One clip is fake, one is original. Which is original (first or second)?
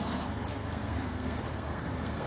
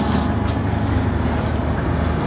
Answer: second